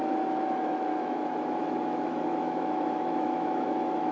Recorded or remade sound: remade